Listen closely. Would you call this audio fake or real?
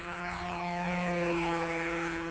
fake